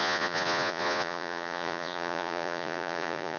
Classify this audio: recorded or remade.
remade